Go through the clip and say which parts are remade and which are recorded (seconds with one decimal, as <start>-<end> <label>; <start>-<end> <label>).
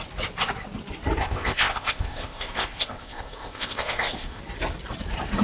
0.0-1.2 recorded; 1.2-4.4 remade; 4.4-5.4 recorded